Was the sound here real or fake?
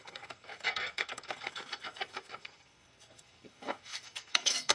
fake